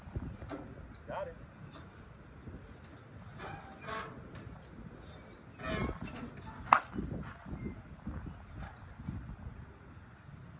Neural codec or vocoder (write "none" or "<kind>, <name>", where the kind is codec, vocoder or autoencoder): none